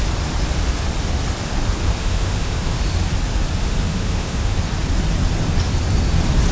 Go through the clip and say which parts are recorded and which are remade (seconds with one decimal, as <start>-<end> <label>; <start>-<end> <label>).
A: 0.0-1.9 recorded; 1.9-2.8 remade; 2.8-3.6 recorded; 3.6-4.6 remade; 4.6-6.5 recorded

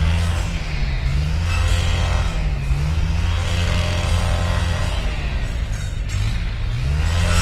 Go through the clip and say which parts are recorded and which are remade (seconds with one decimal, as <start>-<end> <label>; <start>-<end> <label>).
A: 0.0-7.4 recorded

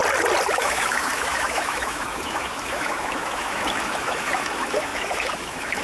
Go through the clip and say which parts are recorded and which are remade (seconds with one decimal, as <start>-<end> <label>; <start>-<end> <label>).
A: 0.0-0.5 recorded; 0.5-5.8 remade

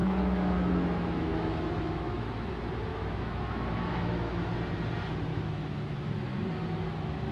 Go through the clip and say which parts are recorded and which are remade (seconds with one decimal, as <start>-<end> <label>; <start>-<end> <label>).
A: 0.0-2.5 remade; 2.5-2.9 recorded; 2.9-4.5 remade; 4.5-5.3 recorded; 5.3-6.1 remade; 6.1-7.3 recorded

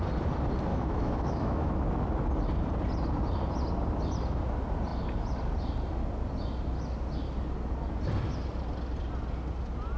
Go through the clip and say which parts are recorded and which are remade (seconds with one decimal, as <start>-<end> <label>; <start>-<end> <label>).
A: 0.0-0.7 recorded; 0.7-1.7 remade; 1.7-10.0 recorded

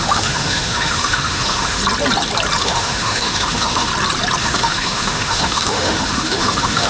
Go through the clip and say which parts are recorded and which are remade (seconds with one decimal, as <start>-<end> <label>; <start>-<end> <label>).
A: 0.0-1.8 remade; 1.8-2.6 recorded; 2.6-3.9 remade; 3.9-4.4 recorded; 4.4-6.9 remade